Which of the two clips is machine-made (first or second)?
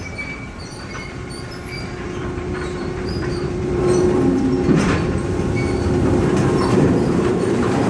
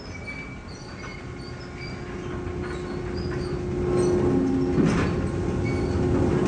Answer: first